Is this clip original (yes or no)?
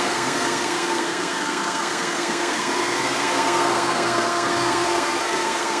no